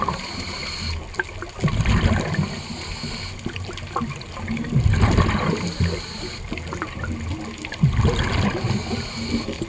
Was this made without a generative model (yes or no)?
yes